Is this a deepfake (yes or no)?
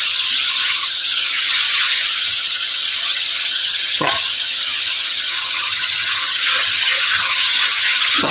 yes